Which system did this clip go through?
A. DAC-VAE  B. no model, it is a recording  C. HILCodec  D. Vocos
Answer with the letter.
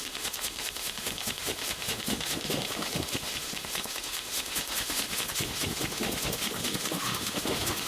A